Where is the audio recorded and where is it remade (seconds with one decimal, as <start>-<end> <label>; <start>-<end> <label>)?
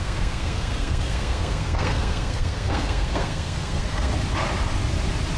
0.0-4.1 remade; 4.1-5.4 recorded